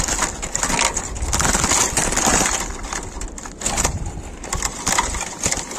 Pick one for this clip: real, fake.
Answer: real